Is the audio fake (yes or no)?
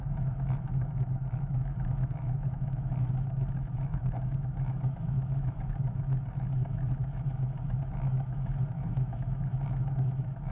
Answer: yes